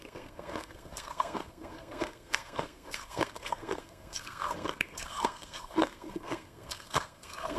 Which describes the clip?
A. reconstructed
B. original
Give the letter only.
A